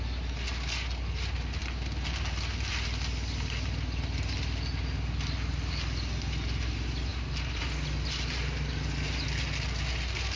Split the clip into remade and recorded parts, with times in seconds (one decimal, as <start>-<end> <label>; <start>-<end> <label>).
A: 0.0-10.4 recorded